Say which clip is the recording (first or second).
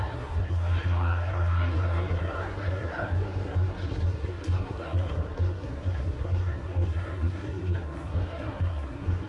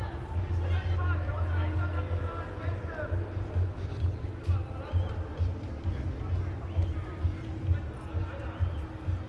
second